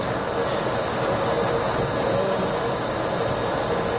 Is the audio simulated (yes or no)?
no